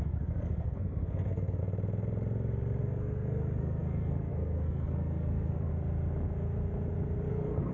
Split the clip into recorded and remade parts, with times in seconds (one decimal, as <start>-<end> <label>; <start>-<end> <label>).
0.0-1.6 remade; 1.6-2.8 recorded; 2.8-5.7 remade; 5.7-7.3 recorded; 7.3-7.7 remade